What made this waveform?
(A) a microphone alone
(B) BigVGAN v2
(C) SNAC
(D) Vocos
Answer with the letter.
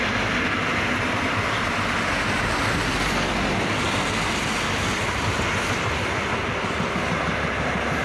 A